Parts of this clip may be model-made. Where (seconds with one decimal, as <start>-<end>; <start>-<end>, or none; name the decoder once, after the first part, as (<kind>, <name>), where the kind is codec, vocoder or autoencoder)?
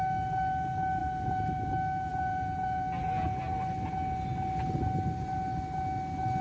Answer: 1.0-1.7 (vocoder, Vocos); 2.1-3.4